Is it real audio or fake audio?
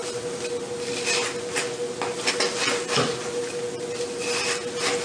real